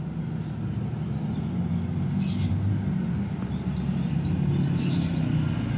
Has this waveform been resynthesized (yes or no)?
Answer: no